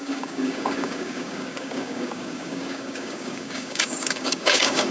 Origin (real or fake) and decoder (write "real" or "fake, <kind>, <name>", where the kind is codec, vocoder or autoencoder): fake, codec, DAC